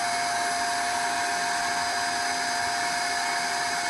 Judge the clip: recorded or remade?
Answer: recorded